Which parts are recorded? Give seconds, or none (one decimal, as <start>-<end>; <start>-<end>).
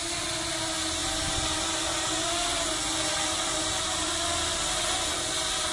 0.0-5.7